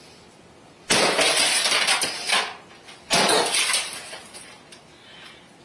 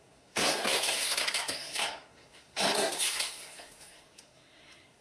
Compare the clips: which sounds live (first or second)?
first